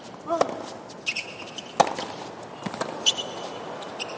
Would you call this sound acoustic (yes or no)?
yes